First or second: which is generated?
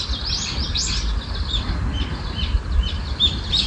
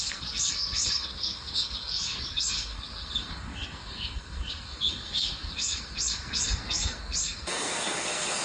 second